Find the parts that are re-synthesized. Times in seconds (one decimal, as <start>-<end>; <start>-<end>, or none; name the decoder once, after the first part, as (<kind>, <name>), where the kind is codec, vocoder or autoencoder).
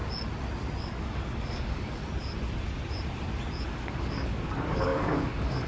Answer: 0.8-2.0 (codec, DAC); 3.7-5.7